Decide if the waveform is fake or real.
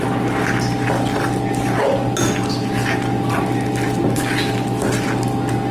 real